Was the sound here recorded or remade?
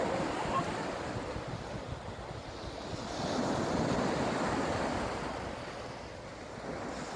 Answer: recorded